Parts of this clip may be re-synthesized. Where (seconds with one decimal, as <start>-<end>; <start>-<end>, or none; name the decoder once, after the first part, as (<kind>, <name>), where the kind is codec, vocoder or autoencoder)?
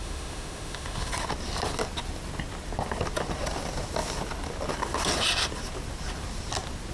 0.0-1.1 (autoencoder, DAC-VAE)